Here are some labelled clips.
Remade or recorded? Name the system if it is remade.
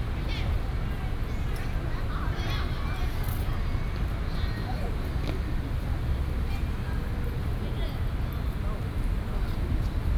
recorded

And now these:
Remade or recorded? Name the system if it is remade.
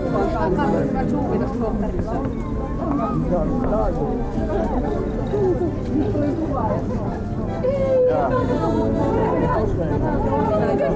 recorded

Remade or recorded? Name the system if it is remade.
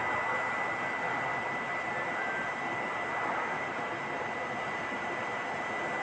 recorded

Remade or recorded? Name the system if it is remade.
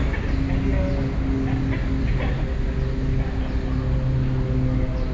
recorded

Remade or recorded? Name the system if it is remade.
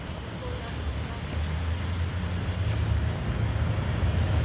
recorded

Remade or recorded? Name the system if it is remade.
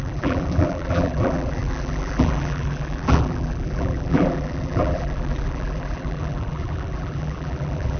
remade, vocoder, BigVGAN v2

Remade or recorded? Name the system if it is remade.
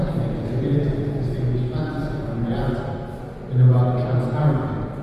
recorded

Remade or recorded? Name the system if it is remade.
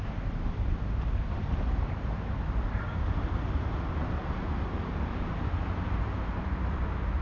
remade, vocoder, BigVGAN v2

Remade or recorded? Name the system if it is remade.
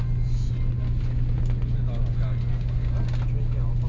recorded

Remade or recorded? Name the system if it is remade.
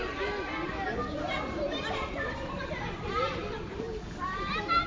remade, vocoder, BigVGAN v2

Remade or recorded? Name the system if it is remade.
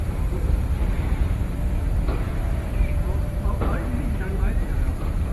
remade, vocoder, BigVGAN v2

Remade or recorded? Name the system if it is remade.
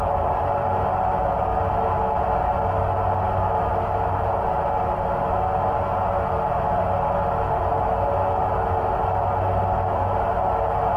recorded